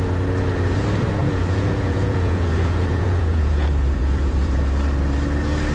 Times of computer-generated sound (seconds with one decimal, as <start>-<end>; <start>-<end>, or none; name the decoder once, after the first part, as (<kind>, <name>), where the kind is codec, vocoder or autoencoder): 1.2-4.6 (vocoder, Vocos)